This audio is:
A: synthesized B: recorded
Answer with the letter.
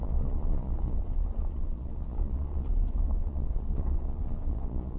A